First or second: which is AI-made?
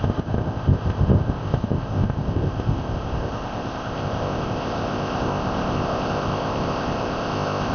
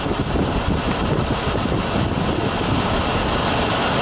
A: first